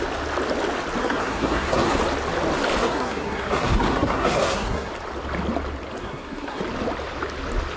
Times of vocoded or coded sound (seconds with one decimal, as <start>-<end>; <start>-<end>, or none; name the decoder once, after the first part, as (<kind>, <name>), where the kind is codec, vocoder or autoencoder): 1.0-2.0 (codec, SNAC); 2.8-4.9; 6.0-6.6